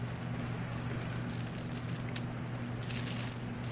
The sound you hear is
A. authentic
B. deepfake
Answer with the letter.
A